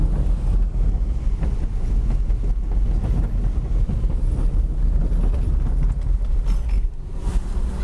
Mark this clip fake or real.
real